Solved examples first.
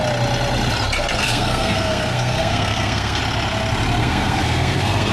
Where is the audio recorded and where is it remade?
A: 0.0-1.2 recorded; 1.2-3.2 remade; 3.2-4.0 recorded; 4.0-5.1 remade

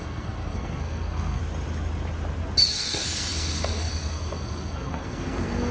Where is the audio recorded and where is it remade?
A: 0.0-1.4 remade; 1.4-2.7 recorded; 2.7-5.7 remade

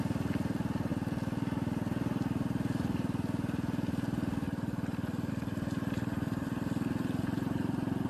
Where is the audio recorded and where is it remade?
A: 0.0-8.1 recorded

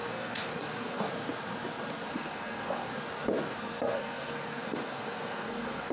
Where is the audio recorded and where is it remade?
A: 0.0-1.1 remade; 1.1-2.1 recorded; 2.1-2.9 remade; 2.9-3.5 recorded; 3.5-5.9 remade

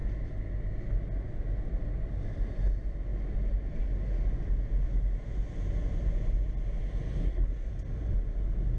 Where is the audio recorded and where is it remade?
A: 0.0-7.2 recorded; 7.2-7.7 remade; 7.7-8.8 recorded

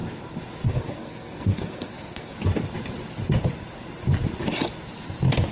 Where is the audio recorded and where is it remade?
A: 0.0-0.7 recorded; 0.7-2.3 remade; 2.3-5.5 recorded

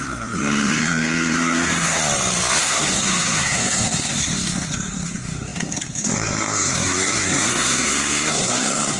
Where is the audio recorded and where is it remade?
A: 0.0-2.0 remade; 2.0-2.6 recorded; 2.6-9.0 remade